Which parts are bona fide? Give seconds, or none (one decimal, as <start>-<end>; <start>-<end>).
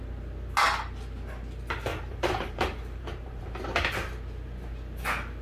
0.0-1.9; 3.4-5.4